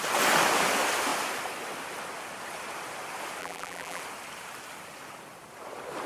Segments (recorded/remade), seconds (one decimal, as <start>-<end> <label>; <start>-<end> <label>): 0.0-3.4 recorded; 3.4-4.0 remade; 4.0-6.1 recorded